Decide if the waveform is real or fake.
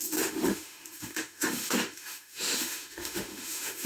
fake